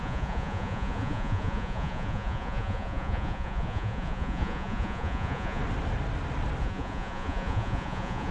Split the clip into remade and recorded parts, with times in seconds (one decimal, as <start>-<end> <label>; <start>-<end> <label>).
0.0-5.6 remade; 5.6-6.6 recorded; 6.6-8.3 remade